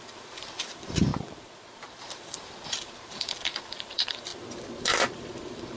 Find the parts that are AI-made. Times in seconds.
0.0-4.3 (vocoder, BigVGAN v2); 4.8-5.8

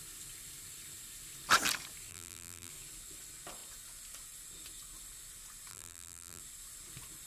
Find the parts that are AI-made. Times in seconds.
2.1-2.7 (vocoder, BigVGAN v2); 5.7-6.4

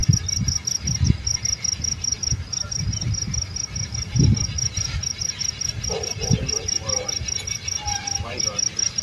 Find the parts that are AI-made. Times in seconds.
2.1-7.2 (vocoder, BigVGAN v2)